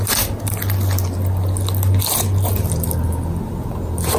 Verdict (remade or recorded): recorded